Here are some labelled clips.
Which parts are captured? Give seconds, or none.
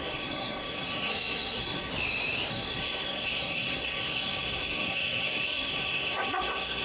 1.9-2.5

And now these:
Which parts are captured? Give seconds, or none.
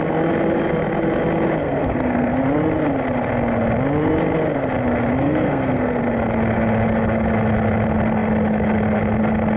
0.0-1.6; 2.4-5.2; 6.0-9.6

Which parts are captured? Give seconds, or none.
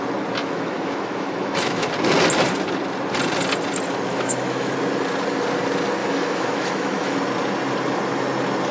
0.0-0.4; 1.9-4.1; 4.7-6.0; 7.2-8.7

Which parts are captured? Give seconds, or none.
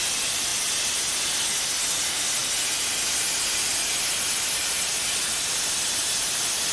0.0-6.7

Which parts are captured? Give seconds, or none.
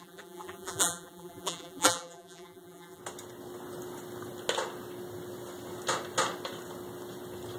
3.0-7.6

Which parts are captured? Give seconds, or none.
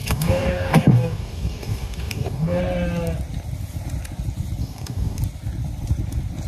2.6-4.6; 5.2-6.5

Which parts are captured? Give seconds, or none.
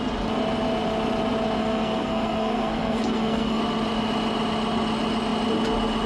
0.0-1.6; 3.6-6.1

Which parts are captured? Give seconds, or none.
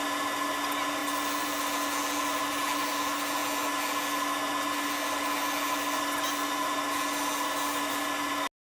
0.0-8.6